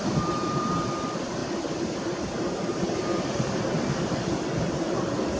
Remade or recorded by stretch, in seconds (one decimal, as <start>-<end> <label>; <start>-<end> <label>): 0.0-0.9 remade; 0.9-1.4 recorded; 1.4-3.6 remade; 3.6-5.4 recorded